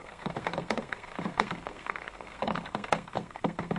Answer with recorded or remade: remade